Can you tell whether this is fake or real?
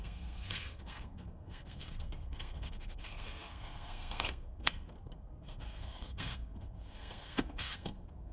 fake